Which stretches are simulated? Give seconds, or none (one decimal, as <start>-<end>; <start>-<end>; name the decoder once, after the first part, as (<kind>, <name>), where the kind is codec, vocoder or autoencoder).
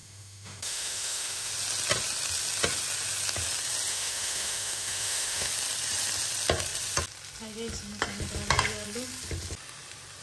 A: 0.0-1.5 (autoencoder, DAC-VAE); 3.9-5.5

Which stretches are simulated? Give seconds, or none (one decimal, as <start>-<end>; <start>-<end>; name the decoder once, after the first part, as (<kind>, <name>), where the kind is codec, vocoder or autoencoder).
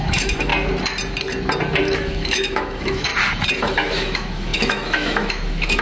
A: 0.0-0.5 (autoencoder, DAC-VAE); 1.8-3.1; 3.6-5.8